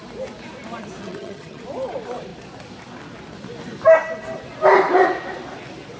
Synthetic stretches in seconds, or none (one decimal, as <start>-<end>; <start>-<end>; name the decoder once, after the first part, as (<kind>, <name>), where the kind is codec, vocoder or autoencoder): 1.0-1.6 (vocoder, HiFi-GAN)